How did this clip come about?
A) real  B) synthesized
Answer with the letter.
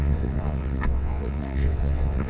B